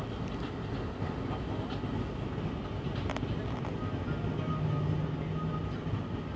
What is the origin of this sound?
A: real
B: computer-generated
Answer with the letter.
A